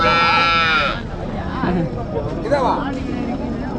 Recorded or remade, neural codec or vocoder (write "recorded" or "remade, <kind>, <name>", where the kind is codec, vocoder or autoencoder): recorded